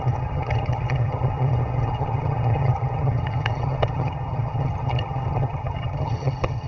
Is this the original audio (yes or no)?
no